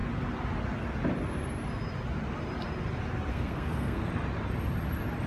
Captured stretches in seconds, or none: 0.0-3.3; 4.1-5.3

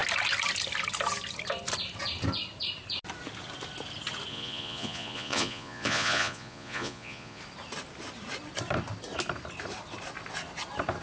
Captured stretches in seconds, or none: 0.0-4.3; 7.4-11.0

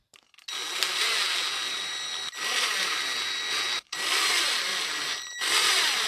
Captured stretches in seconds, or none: 0.0-6.1

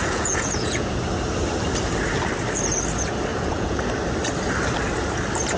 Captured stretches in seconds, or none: 0.9-3.3; 3.8-5.6

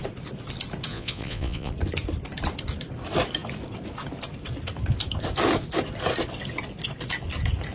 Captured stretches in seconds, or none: 0.0-0.9; 1.7-7.7